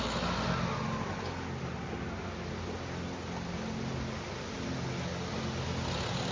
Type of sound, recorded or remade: recorded